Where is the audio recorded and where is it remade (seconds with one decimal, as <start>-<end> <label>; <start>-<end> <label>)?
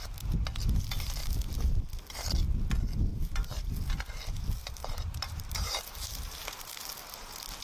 0.0-1.2 recorded; 1.2-1.8 remade; 1.8-3.1 recorded; 3.1-3.7 remade; 3.7-4.6 recorded; 4.6-6.7 remade; 6.7-7.6 recorded